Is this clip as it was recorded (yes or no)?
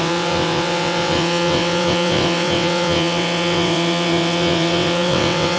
no